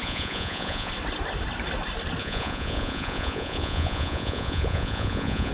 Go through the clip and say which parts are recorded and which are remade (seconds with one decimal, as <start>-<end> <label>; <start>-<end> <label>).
0.0-0.9 remade; 0.9-2.2 recorded; 2.2-5.5 remade